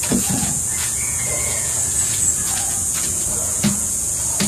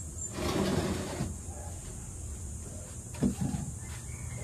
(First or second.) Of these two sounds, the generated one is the first